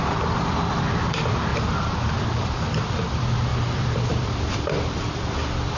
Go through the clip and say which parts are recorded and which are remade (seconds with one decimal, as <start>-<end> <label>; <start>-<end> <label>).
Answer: 0.0-1.5 remade; 1.5-2.1 recorded; 2.1-5.8 remade